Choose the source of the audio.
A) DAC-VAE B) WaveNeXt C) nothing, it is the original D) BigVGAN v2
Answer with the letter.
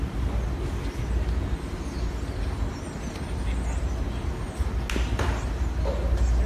C